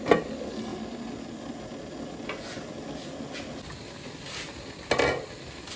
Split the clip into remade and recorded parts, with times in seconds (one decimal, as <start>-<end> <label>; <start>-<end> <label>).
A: 0.0-5.8 recorded